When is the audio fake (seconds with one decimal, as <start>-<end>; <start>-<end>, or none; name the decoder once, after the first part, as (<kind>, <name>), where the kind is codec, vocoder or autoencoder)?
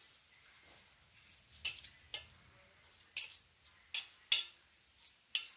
none